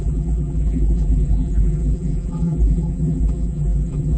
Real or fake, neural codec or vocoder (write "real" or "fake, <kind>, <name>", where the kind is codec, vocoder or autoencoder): fake, vocoder, BigVGAN v2